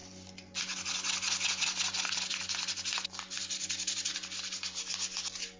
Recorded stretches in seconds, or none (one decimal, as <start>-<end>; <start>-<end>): 0.0-5.6

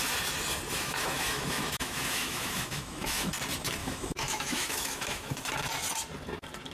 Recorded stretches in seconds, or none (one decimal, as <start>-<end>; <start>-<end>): 0.0-0.7; 3.3-3.8; 5.4-6.7

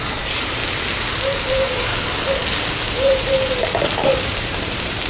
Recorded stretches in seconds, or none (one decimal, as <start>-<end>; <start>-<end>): 0.6-1.5; 1.9-2.9

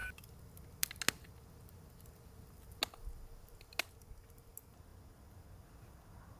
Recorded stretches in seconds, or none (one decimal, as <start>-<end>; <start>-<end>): 0.0-6.4

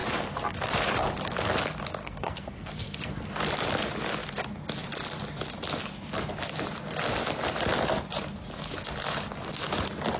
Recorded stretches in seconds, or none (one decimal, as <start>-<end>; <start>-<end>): 0.0-2.0; 3.1-10.2

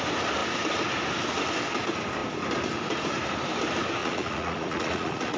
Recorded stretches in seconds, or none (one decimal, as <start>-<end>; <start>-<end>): 0.0-4.0

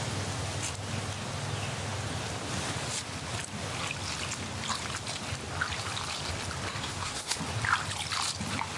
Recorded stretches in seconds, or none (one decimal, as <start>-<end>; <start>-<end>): 0.0-6.7; 7.4-8.8

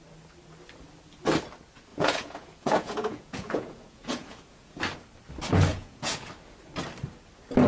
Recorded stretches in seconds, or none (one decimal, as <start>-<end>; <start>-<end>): 0.0-1.9; 4.8-5.7; 6.3-7.7